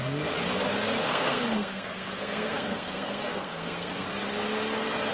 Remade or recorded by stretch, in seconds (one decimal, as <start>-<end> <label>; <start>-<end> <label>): 0.0-1.0 recorded; 1.0-4.1 remade; 4.1-5.1 recorded